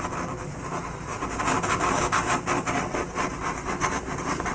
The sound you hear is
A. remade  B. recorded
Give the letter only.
B